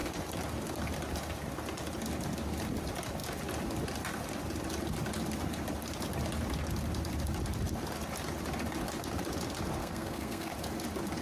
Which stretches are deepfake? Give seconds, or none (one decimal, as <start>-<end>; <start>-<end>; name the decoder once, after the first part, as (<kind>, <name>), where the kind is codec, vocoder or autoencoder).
9.8-10.5 (codec, SNAC)